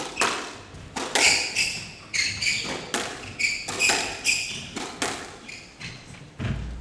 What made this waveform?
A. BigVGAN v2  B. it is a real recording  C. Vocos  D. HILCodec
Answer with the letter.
B